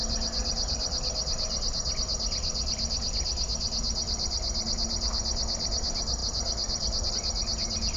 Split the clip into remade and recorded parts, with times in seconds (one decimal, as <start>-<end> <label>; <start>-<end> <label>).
0.0-8.0 recorded